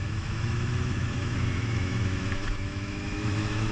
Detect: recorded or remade remade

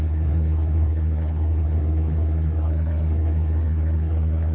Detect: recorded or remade remade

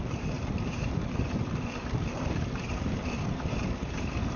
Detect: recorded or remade remade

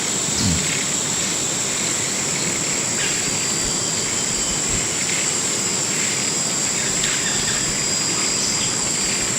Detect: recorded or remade recorded